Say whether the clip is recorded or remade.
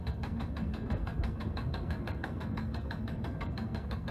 remade